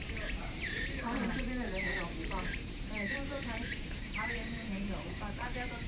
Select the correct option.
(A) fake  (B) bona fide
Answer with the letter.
A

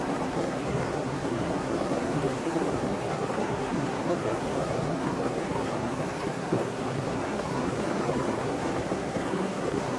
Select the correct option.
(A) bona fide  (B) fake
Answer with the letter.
B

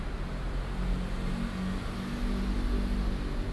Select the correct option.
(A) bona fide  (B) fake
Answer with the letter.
A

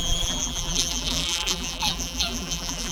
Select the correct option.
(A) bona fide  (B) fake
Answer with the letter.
B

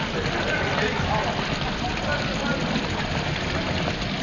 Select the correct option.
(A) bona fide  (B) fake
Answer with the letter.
A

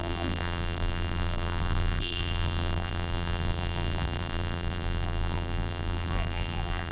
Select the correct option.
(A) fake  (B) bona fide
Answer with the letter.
A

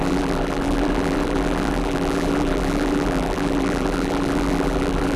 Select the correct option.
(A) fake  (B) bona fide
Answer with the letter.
A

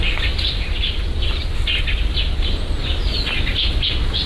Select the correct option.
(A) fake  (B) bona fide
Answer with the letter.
B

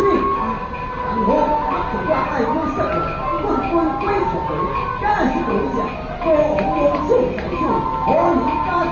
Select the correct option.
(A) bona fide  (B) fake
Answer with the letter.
A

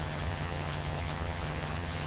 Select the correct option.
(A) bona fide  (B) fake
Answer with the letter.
B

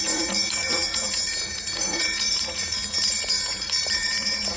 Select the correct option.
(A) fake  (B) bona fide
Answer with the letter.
A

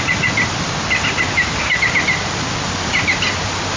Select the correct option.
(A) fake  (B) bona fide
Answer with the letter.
B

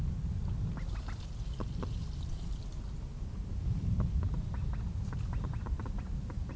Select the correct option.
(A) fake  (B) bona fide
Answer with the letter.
B